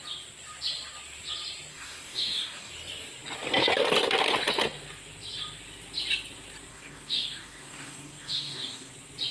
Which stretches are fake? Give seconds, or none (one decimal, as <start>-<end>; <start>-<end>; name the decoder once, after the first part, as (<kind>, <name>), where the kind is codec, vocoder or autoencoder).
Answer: 1.7-2.7 (codec, DAC); 6.7-8.9